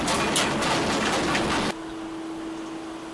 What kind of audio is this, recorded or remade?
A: recorded